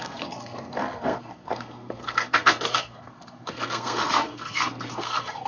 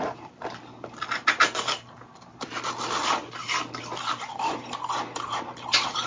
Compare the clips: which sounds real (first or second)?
second